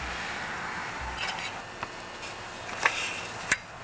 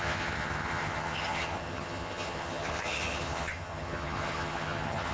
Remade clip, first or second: second